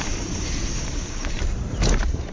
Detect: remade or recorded remade